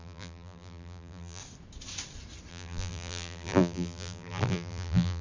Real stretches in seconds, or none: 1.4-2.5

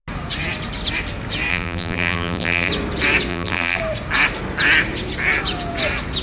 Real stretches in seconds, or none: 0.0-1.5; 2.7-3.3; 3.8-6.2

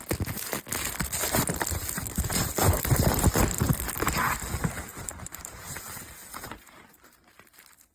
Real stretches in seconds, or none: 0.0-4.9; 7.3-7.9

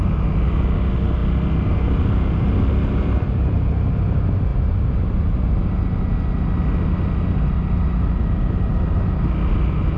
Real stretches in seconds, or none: 0.0-10.0